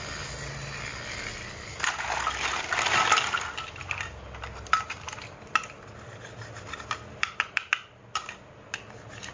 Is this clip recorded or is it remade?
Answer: recorded